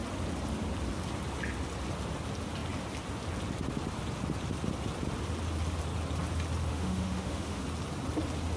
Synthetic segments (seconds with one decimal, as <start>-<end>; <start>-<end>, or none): 6.7-7.6